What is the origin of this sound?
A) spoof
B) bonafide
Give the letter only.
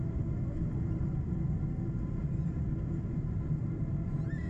B